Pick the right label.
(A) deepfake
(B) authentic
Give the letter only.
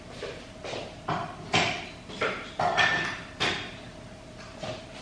A